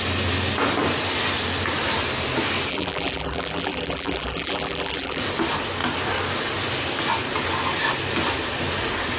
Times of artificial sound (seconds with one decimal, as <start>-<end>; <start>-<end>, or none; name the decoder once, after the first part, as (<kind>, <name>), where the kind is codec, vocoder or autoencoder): 2.7-5.2 (vocoder, BigVGAN v2)